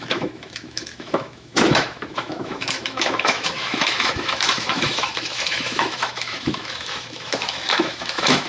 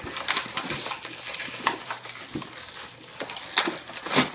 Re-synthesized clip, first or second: first